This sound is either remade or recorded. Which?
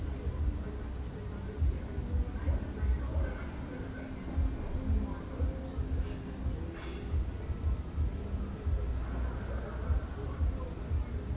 recorded